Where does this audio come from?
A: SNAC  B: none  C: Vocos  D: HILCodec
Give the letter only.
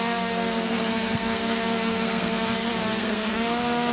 A